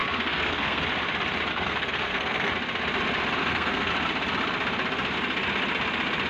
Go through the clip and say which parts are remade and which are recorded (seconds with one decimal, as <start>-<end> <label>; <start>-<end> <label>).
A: 0.0-0.8 remade; 0.8-1.5 recorded; 1.5-2.5 remade; 2.5-3.4 recorded; 3.4-3.9 remade; 3.9-6.3 recorded